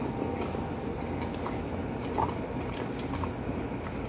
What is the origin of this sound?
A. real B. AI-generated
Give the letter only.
A